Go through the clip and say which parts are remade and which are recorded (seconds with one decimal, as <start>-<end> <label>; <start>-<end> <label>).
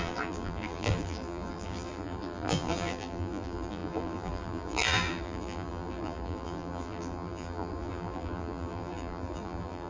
0.0-9.9 remade